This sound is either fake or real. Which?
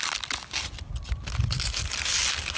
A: real